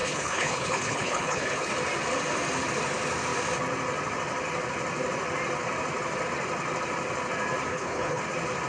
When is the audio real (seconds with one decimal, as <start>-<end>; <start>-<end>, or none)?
1.7-7.7; 8.2-8.7